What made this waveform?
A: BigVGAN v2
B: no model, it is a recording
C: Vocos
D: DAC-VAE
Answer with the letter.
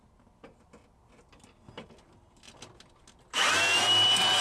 B